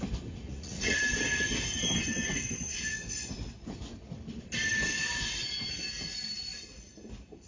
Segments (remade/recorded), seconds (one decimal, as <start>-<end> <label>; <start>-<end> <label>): 0.0-0.5 recorded; 0.5-1.0 remade; 1.0-7.5 recorded